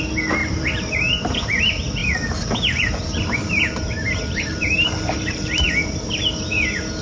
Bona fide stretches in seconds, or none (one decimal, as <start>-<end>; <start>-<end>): 0.0-0.4; 1.1-2.0; 6.2-7.0